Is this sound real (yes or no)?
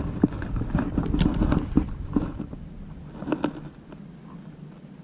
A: yes